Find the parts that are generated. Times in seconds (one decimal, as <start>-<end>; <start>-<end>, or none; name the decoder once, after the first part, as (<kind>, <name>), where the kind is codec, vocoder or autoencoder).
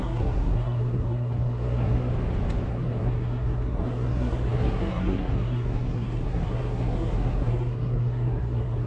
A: 0.0-2.1 (codec, SNAC); 2.7-8.9